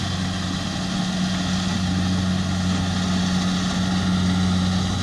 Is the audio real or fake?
real